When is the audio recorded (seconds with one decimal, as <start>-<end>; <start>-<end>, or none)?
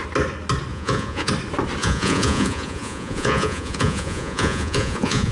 0.0-0.7; 1.3-1.8